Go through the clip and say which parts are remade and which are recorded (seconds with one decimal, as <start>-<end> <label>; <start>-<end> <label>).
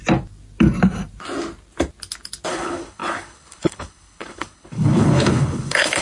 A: 0.0-2.5 recorded; 2.5-6.0 remade